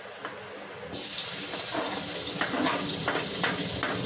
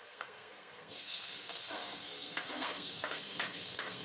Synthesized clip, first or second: second